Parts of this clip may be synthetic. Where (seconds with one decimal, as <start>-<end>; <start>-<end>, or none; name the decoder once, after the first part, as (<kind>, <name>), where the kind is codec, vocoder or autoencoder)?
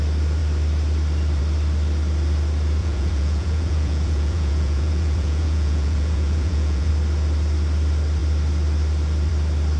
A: 2.8-6.9 (vocoder, Vocos)